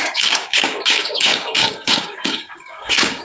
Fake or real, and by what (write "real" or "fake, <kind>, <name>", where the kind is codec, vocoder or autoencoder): fake, codec, DAC